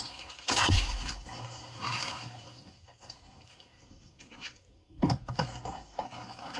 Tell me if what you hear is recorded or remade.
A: remade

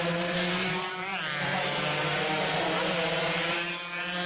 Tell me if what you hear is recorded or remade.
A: remade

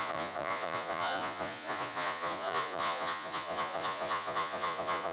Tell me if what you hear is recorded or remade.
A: remade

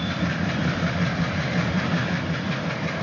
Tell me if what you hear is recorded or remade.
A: remade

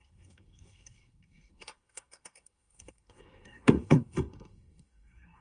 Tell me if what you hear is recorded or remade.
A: remade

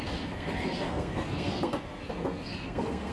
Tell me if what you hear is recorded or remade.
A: remade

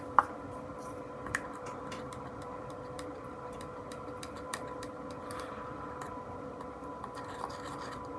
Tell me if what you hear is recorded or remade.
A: remade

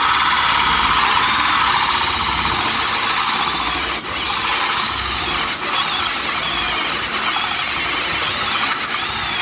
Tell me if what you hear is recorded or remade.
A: recorded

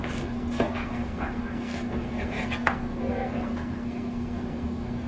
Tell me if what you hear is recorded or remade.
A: remade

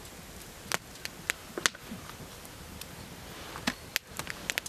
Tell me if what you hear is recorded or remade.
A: recorded